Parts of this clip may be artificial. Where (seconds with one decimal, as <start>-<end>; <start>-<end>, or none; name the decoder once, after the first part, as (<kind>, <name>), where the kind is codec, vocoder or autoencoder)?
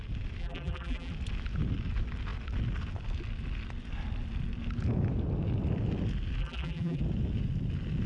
0.4-1.1 (vocoder, BigVGAN v2); 6.4-7.0